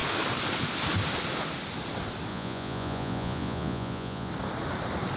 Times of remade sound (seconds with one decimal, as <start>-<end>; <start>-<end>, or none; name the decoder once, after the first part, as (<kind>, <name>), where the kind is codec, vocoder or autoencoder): 2.3-4.3 (vocoder, Vocos)